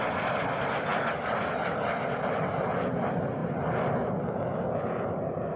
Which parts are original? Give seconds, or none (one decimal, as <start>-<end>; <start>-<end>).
0.0-5.6